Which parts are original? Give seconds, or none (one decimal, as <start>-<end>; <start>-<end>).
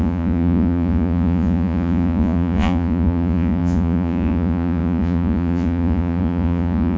none